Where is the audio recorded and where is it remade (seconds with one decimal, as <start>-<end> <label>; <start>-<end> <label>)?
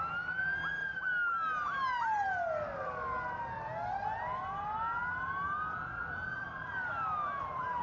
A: 0.0-7.8 recorded